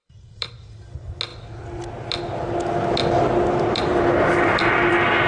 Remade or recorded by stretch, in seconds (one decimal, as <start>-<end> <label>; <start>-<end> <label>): 0.0-0.8 remade; 0.8-5.3 recorded